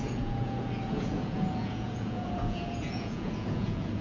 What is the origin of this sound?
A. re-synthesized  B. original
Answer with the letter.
A